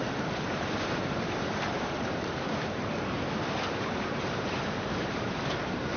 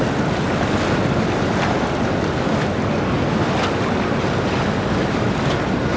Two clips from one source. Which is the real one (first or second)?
second